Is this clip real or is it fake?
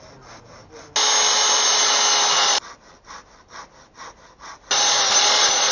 real